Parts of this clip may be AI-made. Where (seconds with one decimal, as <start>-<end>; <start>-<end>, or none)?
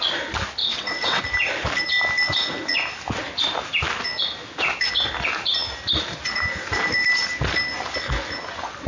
0.6-1.2